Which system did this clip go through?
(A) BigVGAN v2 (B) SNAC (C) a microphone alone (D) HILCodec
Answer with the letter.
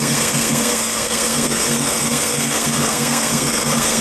B